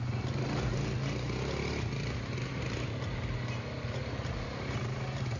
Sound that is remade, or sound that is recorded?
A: recorded